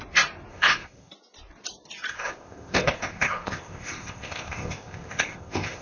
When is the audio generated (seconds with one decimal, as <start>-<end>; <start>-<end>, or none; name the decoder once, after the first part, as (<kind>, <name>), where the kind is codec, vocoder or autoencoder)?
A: 0.5-1.1 (codec, ZipCodec); 2.1-5.8

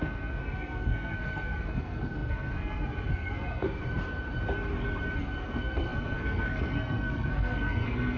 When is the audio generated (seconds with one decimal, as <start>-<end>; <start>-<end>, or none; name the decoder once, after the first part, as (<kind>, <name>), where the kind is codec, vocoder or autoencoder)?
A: 0.0-3.8 (codec, SNAC); 5.2-8.2